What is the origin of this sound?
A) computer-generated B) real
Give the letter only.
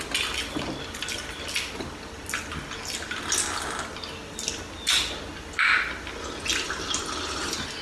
B